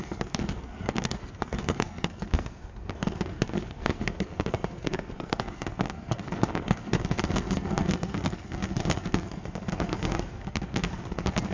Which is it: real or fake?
fake